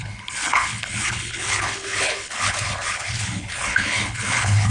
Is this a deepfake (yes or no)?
yes